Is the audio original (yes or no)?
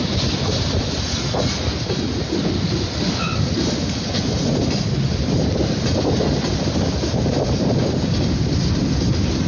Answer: yes